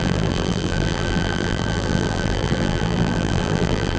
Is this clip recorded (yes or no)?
no